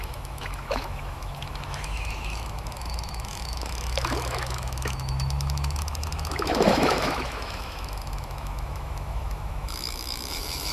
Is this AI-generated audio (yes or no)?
yes